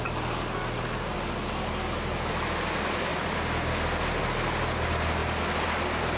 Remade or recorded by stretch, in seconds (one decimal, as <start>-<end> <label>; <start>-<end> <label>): 0.0-6.2 recorded